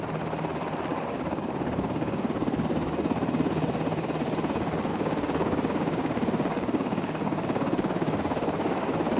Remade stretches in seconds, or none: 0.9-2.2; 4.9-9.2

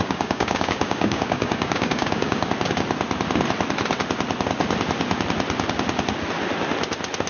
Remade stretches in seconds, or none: 0.0-2.5

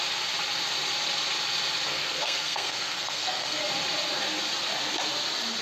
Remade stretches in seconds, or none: 1.9-3.6

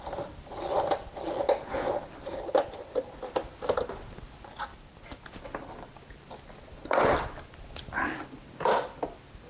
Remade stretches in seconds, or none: none

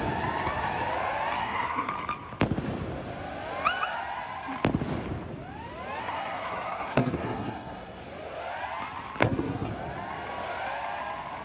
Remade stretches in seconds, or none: 1.4-1.9; 6.0-8.0; 9.2-9.7